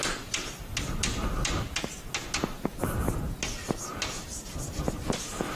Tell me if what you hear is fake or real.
real